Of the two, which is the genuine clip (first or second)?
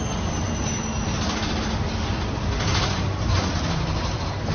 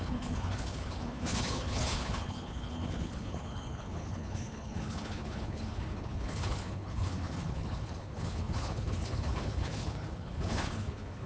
first